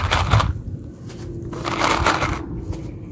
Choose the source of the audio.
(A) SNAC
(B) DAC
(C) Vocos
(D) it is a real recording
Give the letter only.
D